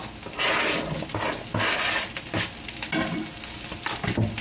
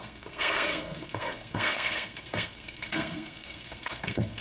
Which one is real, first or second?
first